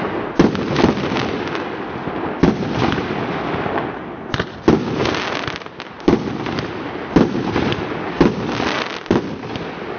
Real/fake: real